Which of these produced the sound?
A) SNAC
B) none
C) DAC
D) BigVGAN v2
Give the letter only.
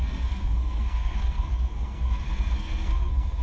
A